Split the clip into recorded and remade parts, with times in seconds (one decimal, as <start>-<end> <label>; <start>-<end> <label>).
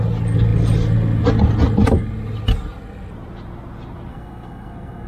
0.0-4.1 recorded; 4.1-5.1 remade